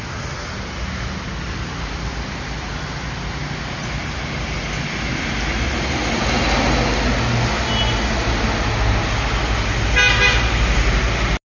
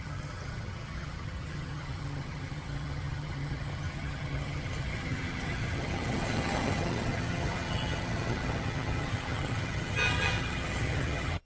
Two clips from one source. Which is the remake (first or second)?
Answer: second